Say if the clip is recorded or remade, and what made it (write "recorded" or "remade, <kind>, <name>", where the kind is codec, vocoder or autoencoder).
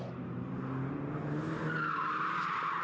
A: recorded